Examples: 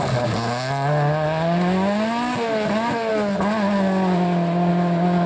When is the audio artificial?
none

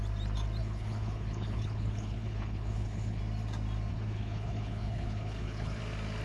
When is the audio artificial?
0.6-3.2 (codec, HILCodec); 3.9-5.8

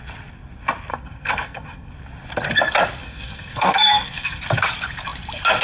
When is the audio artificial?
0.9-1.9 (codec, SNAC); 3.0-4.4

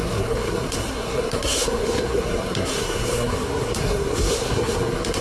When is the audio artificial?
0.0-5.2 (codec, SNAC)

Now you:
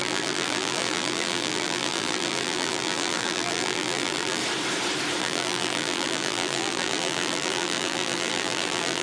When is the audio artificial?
0.0-4.4 (vocoder, BigVGAN v2); 5.2-9.0